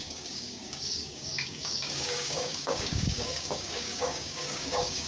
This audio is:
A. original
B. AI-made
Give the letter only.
B